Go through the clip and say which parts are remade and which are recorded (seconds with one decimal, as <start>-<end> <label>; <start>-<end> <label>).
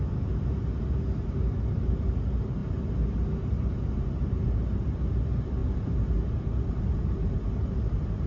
0.0-2.6 remade; 2.6-3.4 recorded; 3.4-8.3 remade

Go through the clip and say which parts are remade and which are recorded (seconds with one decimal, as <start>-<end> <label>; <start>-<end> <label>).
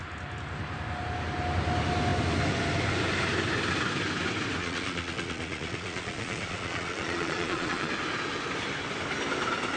0.0-4.6 recorded; 4.6-7.9 remade; 7.9-9.8 recorded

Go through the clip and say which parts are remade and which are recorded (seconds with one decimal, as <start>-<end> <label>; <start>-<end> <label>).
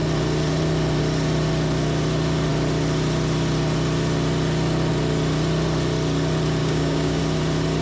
0.0-6.6 recorded; 6.6-7.2 remade; 7.2-7.8 recorded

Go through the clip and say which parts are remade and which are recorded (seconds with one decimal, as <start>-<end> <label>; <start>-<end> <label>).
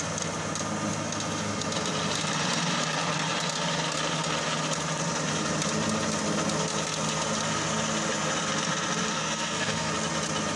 0.0-9.1 recorded; 9.1-9.9 remade; 9.9-10.6 recorded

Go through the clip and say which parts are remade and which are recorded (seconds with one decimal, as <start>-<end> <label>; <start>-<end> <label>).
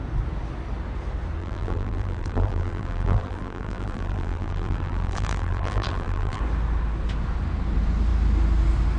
0.0-1.4 recorded; 1.4-6.4 remade; 6.4-9.0 recorded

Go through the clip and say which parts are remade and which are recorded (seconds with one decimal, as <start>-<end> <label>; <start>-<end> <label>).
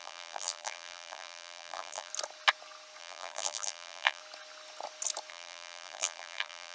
0.0-2.1 remade; 2.1-3.0 recorded; 3.0-4.2 remade; 4.2-5.3 recorded; 5.3-6.7 remade